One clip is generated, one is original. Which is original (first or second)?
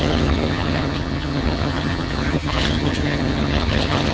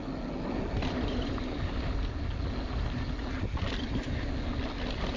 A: second